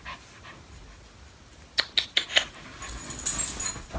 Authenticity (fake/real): real